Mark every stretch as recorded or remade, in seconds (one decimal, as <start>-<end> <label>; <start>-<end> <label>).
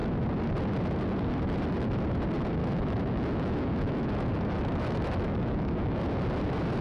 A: 0.0-2.6 recorded; 2.6-6.0 remade; 6.0-6.8 recorded